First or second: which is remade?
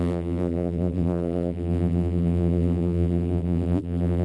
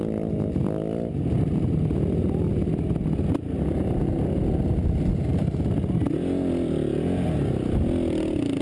first